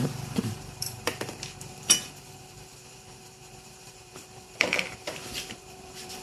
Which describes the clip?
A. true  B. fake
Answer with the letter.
B